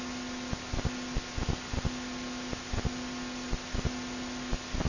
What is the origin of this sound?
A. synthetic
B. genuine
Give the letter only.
B